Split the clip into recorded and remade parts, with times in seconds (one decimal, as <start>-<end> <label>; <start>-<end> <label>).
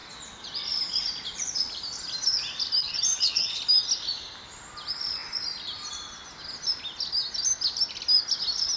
0.0-2.8 recorded; 2.8-3.6 remade; 3.6-8.8 recorded